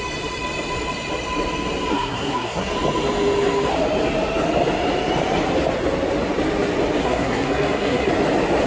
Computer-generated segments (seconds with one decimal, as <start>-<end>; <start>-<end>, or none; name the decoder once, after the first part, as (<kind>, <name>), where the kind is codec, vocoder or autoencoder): 1.9-2.7 (codec, SNAC); 7.0-8.1